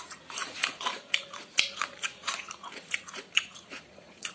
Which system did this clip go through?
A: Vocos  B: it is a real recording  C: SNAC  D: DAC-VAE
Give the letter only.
A